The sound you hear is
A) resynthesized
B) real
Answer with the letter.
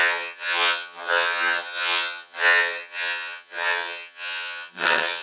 A